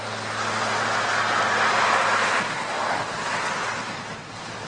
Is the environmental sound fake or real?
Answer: real